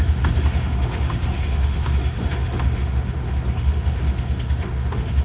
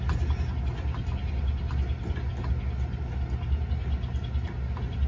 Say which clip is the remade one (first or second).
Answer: first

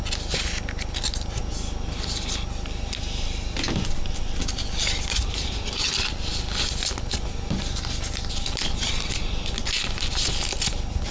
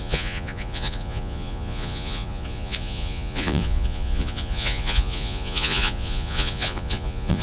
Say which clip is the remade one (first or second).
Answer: second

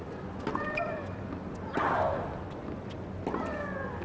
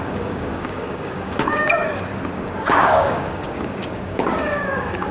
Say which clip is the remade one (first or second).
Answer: second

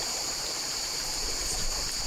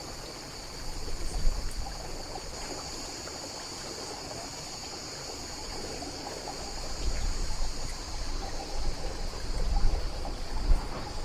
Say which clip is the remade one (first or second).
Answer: first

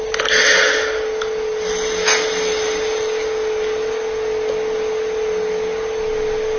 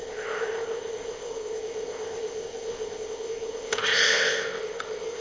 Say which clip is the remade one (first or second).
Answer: second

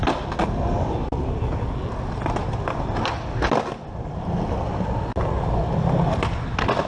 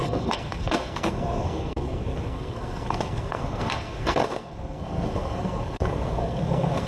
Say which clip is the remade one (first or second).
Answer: second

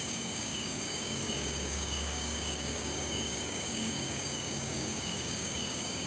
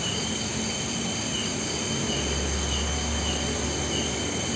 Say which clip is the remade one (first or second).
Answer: first